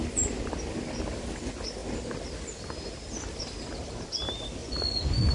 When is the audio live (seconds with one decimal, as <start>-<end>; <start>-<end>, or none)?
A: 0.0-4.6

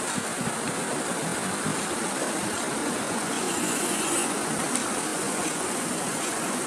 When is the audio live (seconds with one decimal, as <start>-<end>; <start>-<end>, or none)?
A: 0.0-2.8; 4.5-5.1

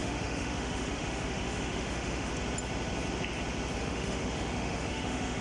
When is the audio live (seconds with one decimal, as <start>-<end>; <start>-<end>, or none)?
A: 2.3-3.8